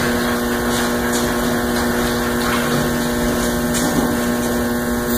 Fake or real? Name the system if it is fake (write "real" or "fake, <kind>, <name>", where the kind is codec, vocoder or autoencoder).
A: real